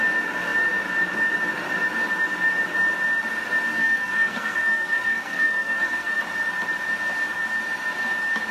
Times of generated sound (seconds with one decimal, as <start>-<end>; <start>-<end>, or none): 3.7-6.2